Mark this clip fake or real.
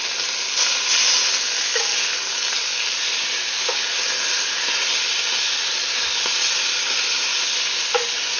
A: real